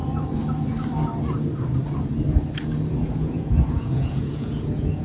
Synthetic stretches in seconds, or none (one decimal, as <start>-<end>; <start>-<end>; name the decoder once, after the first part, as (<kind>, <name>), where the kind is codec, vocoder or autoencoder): 2.9-5.0 (vocoder, Vocos)